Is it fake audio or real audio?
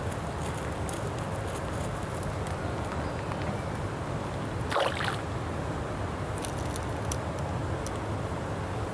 real